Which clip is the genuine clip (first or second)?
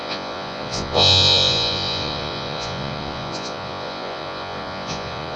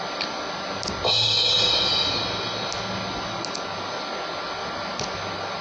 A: second